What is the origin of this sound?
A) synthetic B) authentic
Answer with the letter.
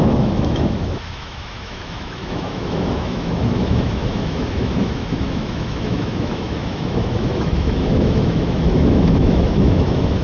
A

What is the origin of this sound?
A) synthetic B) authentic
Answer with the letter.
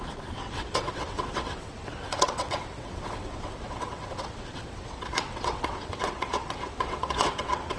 A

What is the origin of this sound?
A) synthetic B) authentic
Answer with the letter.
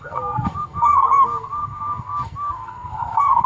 A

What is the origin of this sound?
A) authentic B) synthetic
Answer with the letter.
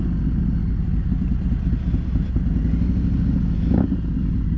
A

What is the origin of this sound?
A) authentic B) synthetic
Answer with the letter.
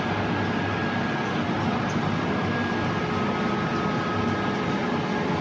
A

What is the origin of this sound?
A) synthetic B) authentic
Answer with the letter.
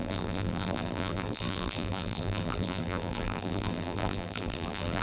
A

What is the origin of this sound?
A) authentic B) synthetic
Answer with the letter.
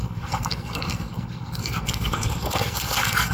B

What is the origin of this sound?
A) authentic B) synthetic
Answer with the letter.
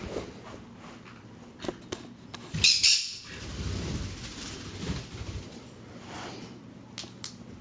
A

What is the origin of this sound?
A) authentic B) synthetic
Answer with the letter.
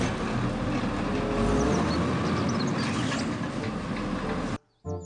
A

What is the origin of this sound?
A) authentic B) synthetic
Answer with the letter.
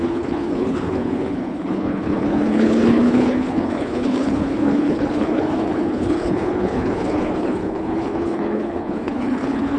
B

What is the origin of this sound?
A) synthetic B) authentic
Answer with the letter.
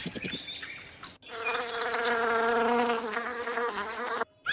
B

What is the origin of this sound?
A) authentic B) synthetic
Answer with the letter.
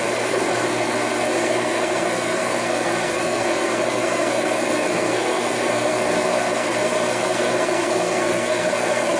B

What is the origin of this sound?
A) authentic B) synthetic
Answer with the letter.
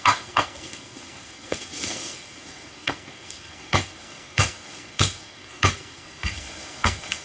B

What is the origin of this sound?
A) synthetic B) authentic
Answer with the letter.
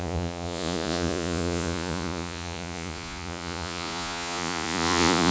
A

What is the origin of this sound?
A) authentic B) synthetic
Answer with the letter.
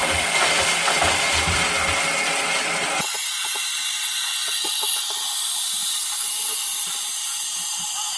A